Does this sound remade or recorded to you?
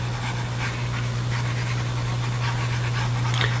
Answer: recorded